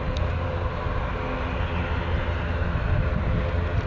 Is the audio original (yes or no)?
yes